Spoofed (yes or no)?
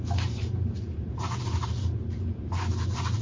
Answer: yes